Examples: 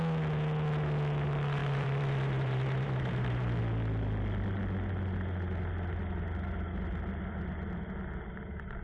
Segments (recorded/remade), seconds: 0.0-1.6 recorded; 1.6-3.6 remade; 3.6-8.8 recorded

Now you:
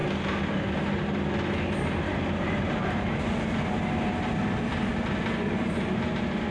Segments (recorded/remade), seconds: 0.0-2.4 recorded; 2.4-4.9 remade; 4.9-5.5 recorded; 5.5-6.5 remade

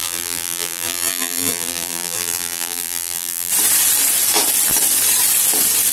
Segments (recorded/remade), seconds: 0.0-3.5 remade; 3.5-5.9 recorded